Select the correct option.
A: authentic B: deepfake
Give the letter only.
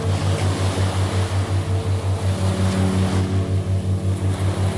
A